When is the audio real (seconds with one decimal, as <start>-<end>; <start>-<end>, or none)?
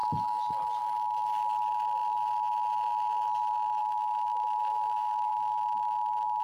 0.0-3.8; 5.3-6.4